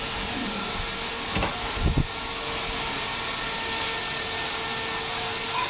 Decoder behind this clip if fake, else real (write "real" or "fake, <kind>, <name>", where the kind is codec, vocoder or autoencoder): real